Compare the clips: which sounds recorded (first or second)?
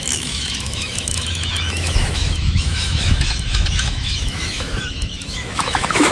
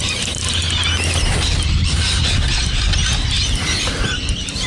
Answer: second